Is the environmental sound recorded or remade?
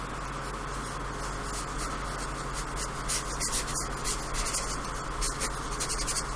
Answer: recorded